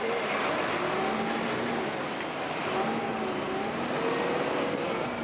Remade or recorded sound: recorded